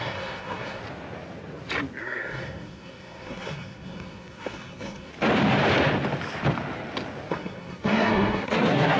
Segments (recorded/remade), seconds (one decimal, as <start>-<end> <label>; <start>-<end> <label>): 0.0-0.8 remade; 0.8-2.0 recorded; 2.0-5.1 remade; 5.1-7.3 recorded; 7.3-9.0 remade